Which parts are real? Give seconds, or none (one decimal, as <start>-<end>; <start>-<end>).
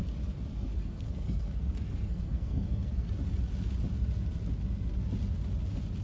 0.0-0.5; 3.1-6.0